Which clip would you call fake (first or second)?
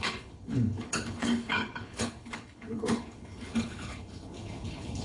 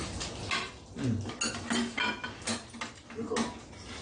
first